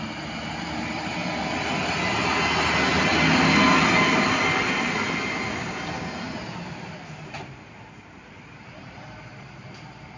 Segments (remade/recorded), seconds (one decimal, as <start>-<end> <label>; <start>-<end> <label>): 0.0-10.2 recorded